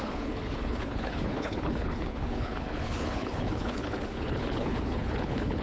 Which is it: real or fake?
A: fake